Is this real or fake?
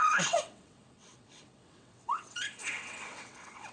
fake